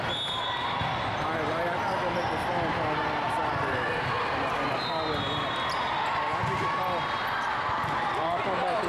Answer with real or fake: real